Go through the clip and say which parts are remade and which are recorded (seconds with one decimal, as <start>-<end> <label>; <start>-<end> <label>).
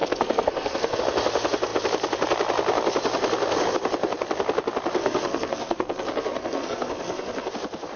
0.0-1.0 remade; 1.0-5.0 recorded; 5.0-7.5 remade; 7.5-8.0 recorded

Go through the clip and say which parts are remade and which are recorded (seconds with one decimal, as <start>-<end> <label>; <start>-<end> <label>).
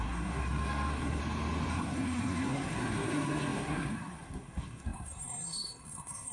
0.0-1.2 remade; 1.2-1.7 recorded; 1.7-6.3 remade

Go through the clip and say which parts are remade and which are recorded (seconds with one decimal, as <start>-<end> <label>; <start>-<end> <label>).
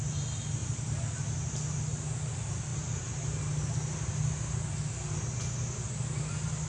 0.0-6.7 recorded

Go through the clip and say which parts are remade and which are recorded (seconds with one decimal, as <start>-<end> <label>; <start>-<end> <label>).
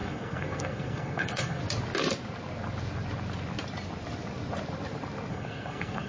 0.0-1.6 remade; 1.6-5.3 recorded; 5.3-6.1 remade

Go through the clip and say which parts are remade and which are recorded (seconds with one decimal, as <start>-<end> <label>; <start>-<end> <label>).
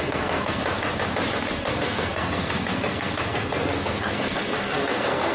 0.0-0.6 remade; 0.6-1.4 recorded; 1.4-5.3 remade